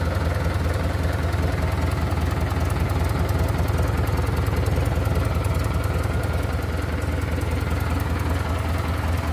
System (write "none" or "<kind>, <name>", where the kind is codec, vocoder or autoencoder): none